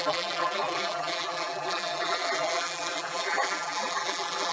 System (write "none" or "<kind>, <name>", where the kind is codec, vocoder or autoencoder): vocoder, BigVGAN v2